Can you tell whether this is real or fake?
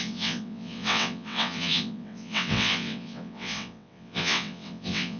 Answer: fake